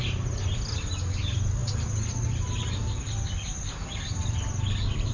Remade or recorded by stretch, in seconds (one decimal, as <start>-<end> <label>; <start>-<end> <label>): 0.0-5.1 recorded